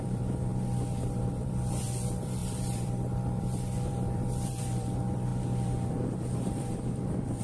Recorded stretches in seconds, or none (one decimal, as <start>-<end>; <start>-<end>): 0.5-1.2; 5.3-5.9